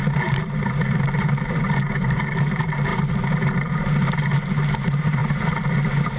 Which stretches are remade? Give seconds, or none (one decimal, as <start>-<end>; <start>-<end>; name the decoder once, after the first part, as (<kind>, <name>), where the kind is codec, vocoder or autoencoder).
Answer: 0.0-2.9 (vocoder, BigVGAN v2); 4.4-5.2